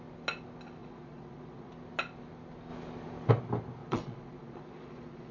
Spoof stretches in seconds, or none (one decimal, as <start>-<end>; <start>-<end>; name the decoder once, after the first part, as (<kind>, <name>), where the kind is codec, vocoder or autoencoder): 0.8-1.7 (vocoder, Vocos); 3.8-5.3